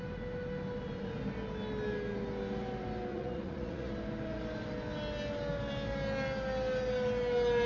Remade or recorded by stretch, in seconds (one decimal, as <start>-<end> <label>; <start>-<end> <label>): 0.0-3.1 recorded; 3.1-3.9 remade; 3.9-7.7 recorded